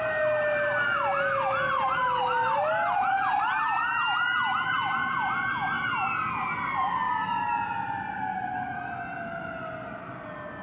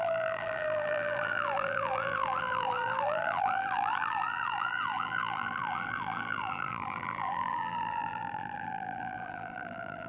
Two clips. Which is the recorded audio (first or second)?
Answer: first